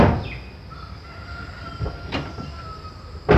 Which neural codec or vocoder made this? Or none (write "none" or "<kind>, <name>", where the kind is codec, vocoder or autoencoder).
none